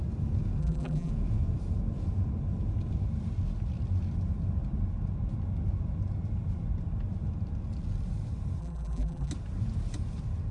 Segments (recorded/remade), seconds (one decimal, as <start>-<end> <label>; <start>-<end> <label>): 0.0-0.6 recorded; 0.6-1.1 remade; 1.1-8.6 recorded; 8.6-9.3 remade; 9.3-10.5 recorded